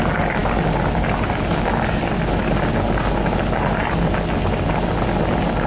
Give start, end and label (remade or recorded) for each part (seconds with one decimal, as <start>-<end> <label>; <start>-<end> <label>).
0.0-5.7 recorded